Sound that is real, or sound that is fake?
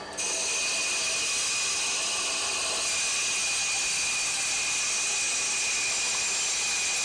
real